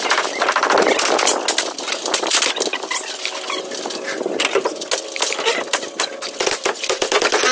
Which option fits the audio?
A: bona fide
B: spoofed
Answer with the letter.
A